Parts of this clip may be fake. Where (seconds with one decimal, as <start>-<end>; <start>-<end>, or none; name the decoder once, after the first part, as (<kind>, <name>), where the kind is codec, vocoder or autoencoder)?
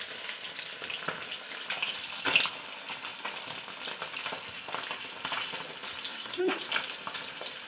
6.1-6.6 (codec, SNAC)